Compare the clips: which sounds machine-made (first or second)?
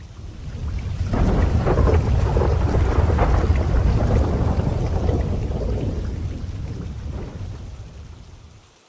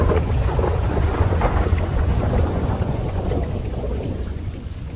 second